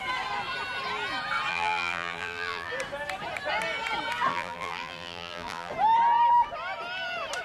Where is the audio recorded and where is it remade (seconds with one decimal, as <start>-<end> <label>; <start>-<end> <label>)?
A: 0.0-1.5 recorded; 1.5-2.7 remade; 2.7-4.3 recorded; 4.3-5.7 remade; 5.7-7.4 recorded